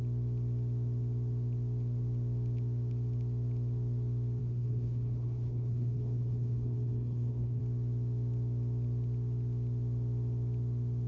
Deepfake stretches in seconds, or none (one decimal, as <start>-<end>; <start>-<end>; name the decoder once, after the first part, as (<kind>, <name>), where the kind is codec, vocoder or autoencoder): 4.4-7.6 (codec, HILCodec)